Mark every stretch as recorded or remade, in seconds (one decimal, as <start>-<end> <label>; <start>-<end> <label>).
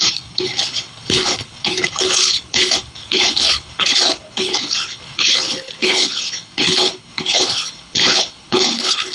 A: 0.0-9.1 remade